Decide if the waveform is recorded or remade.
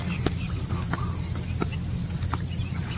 recorded